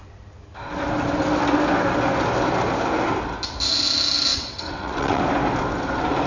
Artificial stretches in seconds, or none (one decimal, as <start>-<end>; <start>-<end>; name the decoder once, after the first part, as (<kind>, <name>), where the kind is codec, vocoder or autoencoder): 4.3-5.2 (vocoder, WaveNeXt)